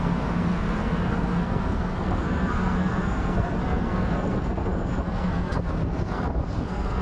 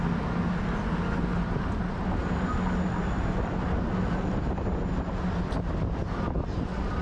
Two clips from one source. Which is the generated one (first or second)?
first